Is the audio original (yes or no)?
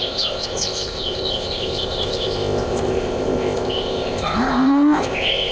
no